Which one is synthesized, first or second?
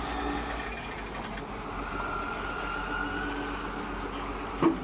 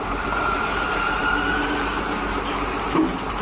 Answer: second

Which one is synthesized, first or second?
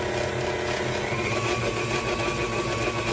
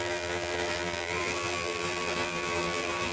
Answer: second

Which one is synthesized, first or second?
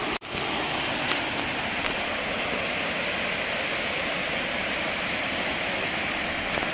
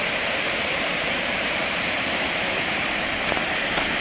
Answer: second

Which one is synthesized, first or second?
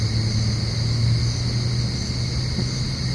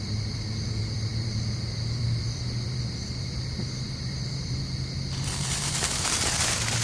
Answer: second